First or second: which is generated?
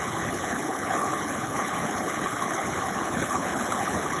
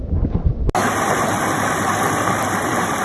first